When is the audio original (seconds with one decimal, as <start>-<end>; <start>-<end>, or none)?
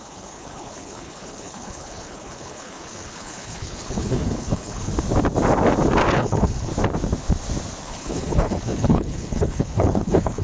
4.9-6.1; 6.7-7.8